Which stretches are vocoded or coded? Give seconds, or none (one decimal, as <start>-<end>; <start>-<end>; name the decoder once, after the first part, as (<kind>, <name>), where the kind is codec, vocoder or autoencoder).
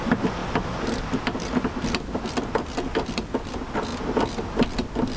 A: none